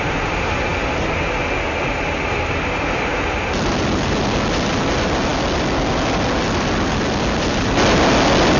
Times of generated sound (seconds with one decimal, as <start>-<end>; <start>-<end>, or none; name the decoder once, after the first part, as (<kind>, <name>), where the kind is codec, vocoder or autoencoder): none